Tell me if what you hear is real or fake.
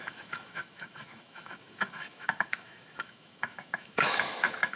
fake